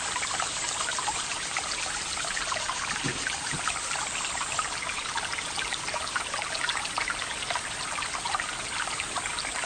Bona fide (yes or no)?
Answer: yes